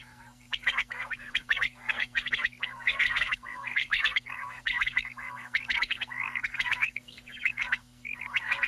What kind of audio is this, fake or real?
fake